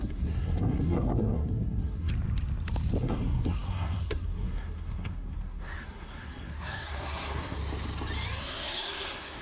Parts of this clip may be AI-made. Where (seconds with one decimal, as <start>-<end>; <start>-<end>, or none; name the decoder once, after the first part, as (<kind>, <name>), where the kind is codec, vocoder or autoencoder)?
0.0-2.1 (codec, SNAC); 3.0-7.6; 8.4-9.4